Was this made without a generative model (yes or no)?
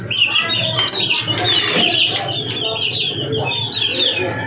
yes